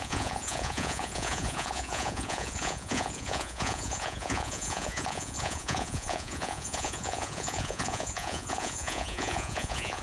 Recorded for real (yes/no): no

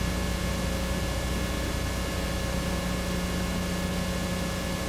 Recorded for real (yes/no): yes